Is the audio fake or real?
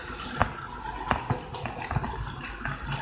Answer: real